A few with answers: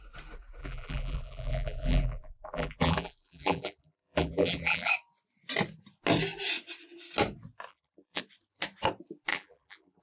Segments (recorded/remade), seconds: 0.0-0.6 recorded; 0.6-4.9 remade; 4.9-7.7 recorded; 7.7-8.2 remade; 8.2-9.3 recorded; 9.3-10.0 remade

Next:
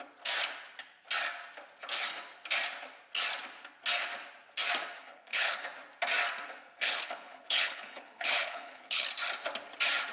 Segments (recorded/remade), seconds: 0.0-5.0 recorded; 5.0-5.6 remade; 5.6-6.6 recorded; 6.6-9.1 remade; 9.1-10.1 recorded

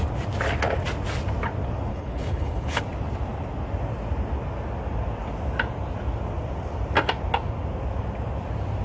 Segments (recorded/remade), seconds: 0.0-1.9 recorded; 1.9-2.8 remade; 2.8-8.8 recorded

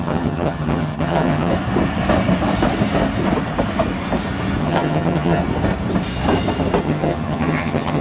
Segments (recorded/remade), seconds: 0.0-1.5 remade; 1.5-4.6 recorded; 4.6-5.4 remade; 5.4-6.8 recorded; 6.8-8.0 remade

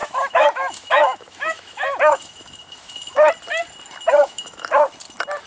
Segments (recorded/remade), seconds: 0.0-3.3 remade; 3.3-4.2 recorded; 4.2-4.8 remade; 4.8-5.5 recorded

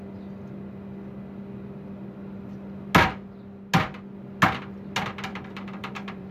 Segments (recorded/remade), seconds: 0.0-5.3 recorded; 5.3-6.3 remade

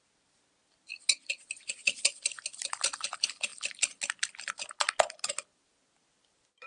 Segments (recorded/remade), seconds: 0.0-6.7 recorded